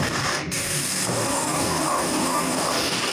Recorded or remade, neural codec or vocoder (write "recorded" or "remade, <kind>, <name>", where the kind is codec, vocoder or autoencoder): remade, codec, DAC